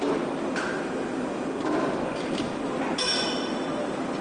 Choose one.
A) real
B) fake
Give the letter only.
A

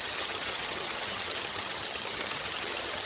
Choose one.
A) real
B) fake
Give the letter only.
B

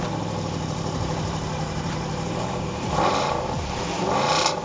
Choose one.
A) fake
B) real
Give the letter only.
A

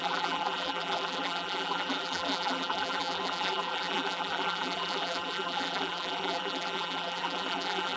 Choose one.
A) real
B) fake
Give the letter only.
B